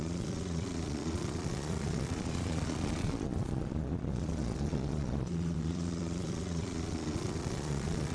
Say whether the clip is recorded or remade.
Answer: remade